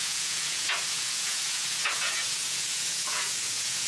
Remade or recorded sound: remade